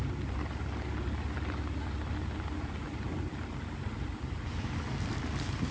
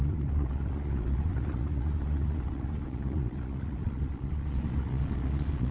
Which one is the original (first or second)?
first